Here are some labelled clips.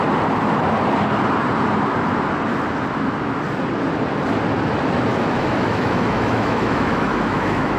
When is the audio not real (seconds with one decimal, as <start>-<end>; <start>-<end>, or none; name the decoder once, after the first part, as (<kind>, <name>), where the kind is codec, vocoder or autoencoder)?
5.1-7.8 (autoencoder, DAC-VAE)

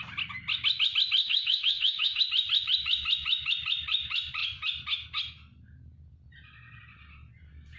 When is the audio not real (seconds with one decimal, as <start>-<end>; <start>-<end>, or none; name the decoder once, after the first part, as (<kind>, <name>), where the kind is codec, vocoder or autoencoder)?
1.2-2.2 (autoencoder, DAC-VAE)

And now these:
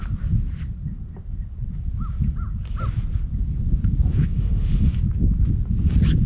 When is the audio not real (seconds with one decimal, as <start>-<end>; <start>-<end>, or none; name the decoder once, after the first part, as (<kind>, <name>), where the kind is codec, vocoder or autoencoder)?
4.2-4.9 (autoencoder, DAC-VAE)